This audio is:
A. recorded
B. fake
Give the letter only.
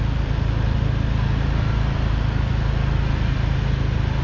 A